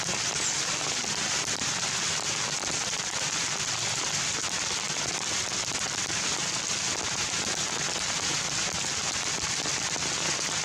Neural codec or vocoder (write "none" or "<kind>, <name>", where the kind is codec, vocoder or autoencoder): none